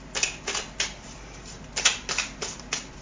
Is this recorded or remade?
recorded